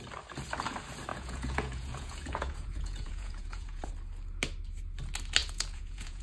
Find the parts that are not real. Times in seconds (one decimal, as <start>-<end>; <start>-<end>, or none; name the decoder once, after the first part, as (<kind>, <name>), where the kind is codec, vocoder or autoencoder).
1.1-3.9 (vocoder, Vocos); 5.4-6.2